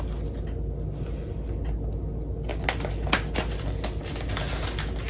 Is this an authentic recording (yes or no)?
yes